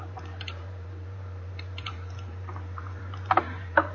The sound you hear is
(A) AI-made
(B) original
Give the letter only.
A